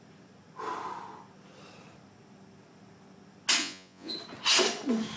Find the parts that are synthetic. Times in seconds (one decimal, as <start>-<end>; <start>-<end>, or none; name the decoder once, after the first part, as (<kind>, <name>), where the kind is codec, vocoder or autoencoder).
3.6-4.1 (vocoder, Vocos)